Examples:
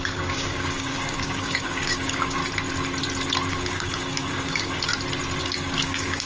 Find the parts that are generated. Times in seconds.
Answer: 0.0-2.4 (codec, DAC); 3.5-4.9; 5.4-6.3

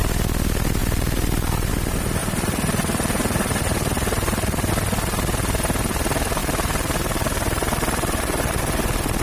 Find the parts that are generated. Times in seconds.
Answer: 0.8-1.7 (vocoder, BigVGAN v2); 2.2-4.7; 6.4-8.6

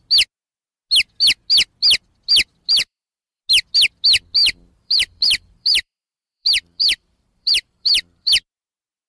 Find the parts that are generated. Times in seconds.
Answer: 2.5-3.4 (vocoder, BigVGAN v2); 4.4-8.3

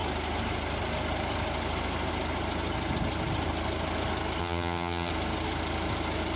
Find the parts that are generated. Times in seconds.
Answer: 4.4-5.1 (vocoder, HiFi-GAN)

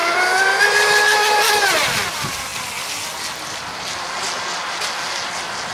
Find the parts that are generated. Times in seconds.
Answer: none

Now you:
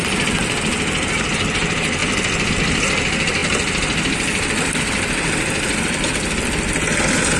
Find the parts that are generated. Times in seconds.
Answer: none

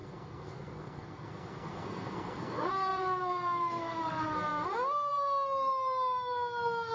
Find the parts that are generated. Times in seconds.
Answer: 0.0-6.9 (codec, SNAC)

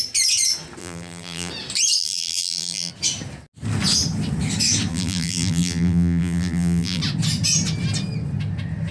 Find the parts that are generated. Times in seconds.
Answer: 0.8-1.5 (vocoder, BigVGAN v2); 2.0-2.9; 4.9-7.0